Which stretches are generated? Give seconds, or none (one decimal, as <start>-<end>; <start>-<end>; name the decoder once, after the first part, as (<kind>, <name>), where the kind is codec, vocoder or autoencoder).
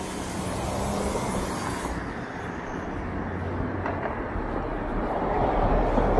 4.7-6.2 (vocoder, BigVGAN v2)